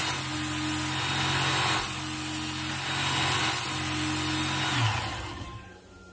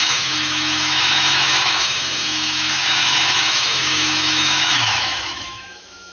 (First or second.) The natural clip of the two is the first